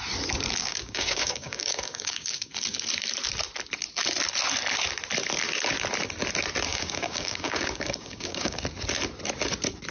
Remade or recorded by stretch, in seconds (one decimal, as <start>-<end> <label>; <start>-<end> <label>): 0.0-0.6 recorded; 0.6-2.5 remade; 2.5-6.7 recorded; 6.7-8.6 remade; 8.6-9.9 recorded